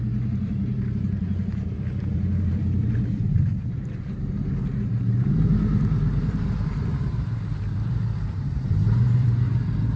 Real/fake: fake